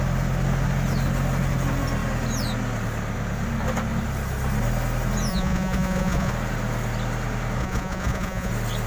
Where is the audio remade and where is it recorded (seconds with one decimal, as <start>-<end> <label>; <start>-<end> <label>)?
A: 0.0-5.3 recorded; 5.3-6.3 remade; 6.3-7.6 recorded; 7.6-8.5 remade; 8.5-8.9 recorded